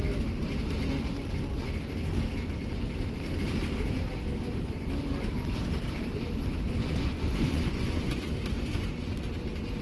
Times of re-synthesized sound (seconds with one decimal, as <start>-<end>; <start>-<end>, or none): 6.8-8.3